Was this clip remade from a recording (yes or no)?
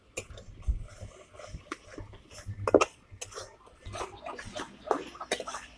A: no